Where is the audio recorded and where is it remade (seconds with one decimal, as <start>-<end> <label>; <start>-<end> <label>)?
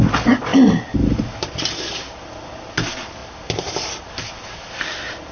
0.0-0.5 recorded; 0.5-1.8 remade; 1.8-3.2 recorded; 3.2-4.1 remade; 4.1-5.3 recorded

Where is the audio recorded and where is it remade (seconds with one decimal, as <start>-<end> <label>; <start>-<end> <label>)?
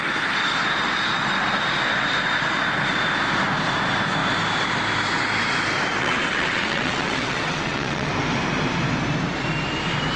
0.0-6.0 recorded; 6.0-8.1 remade; 8.1-10.2 recorded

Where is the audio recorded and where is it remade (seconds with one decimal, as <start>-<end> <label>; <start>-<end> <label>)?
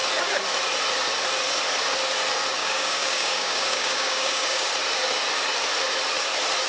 0.0-2.6 recorded; 2.6-4.7 remade; 4.7-6.7 recorded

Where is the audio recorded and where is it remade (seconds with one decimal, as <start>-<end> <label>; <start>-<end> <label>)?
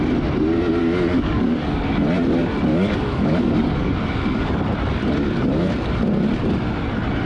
0.0-0.8 recorded; 0.8-1.9 remade; 1.9-2.7 recorded; 2.7-4.5 remade; 4.5-7.3 recorded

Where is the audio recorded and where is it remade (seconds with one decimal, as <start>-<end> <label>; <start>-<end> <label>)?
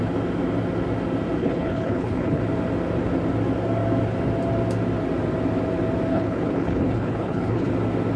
0.0-1.4 recorded; 1.4-2.4 remade; 2.4-6.1 recorded; 6.1-7.7 remade; 7.7-8.2 recorded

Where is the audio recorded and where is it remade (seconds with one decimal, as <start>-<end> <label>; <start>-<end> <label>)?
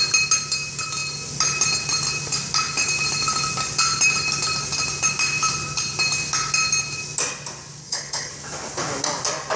0.0-7.8 recorded; 7.8-8.3 remade; 8.3-9.6 recorded